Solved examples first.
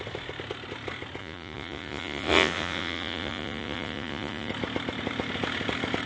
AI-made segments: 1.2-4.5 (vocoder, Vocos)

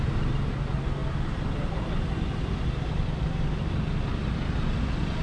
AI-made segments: none

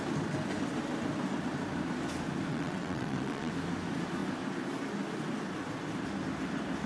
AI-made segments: 2.5-3.5 (vocoder, WaveNeXt)

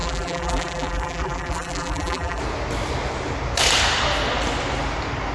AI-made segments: 0.0-2.4 (vocoder, BigVGAN v2)

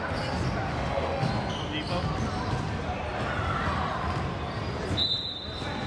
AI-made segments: 0.7-1.3 (autoencoder, DAC-VAE)